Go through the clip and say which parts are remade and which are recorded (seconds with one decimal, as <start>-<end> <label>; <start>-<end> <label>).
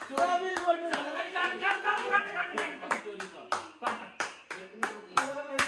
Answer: 0.0-0.5 recorded; 0.5-3.0 remade; 3.0-4.6 recorded; 4.6-5.7 remade